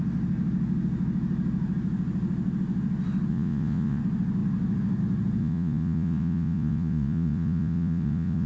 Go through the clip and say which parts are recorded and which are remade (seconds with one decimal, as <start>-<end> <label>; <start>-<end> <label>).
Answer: 0.0-3.3 recorded; 3.3-4.0 remade; 4.0-5.4 recorded; 5.4-8.5 remade